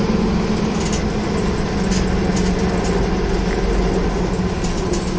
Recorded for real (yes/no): yes